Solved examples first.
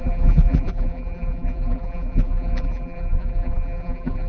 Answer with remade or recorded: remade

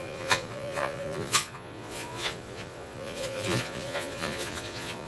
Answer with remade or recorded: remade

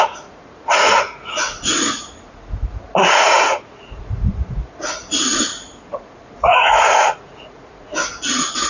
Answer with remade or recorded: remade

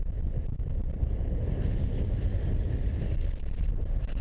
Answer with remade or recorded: recorded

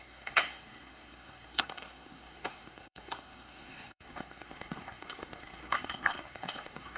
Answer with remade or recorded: remade